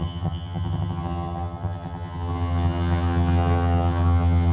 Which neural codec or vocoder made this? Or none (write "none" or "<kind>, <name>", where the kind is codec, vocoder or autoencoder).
vocoder, HiFi-GAN